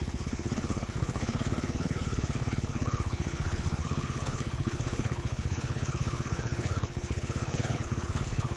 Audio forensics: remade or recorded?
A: remade